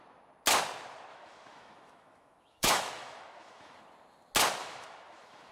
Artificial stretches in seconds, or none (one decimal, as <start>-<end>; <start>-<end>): 1.1-3.8; 4.6-5.5